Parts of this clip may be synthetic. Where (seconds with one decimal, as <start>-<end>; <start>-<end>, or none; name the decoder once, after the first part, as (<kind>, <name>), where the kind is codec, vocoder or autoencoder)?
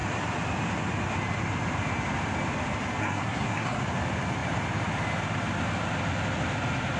3.0-3.8 (codec, SNAC)